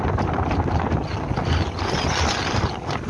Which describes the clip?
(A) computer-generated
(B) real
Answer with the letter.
B